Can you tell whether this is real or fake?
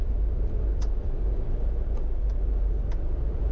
real